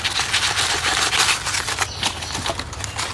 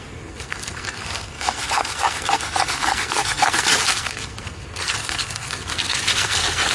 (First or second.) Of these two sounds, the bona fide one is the first